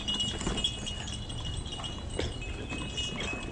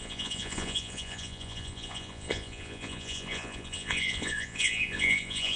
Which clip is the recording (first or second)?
first